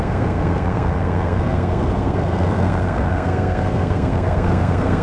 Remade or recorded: remade